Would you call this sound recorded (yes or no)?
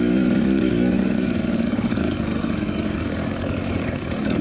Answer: no